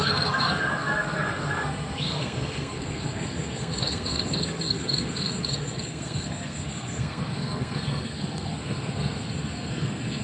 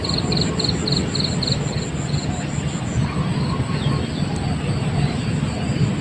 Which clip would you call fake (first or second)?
first